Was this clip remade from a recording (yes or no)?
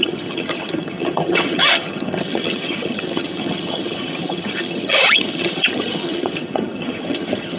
yes